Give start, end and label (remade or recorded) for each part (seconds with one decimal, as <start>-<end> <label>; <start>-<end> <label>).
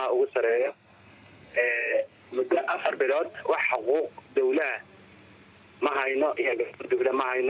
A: 0.0-0.5 recorded; 0.5-3.0 remade; 3.0-7.5 recorded